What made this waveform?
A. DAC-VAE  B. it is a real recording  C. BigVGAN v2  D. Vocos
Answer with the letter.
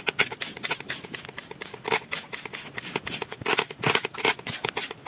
B